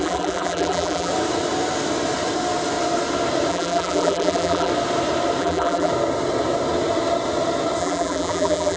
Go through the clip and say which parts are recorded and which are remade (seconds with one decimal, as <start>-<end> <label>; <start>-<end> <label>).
0.0-1.1 remade; 1.1-3.5 recorded; 3.5-4.7 remade; 4.7-5.4 recorded; 5.4-5.9 remade; 5.9-7.8 recorded; 7.8-8.8 remade